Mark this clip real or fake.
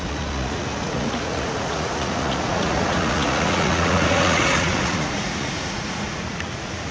fake